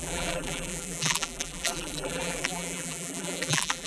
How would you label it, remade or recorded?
remade